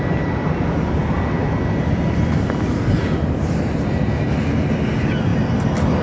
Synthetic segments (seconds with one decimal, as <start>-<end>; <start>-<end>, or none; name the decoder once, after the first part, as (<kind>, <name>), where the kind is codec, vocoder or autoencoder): none